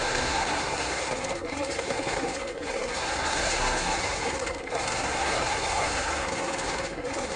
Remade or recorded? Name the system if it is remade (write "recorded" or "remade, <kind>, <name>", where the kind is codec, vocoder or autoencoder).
remade, codec, SNAC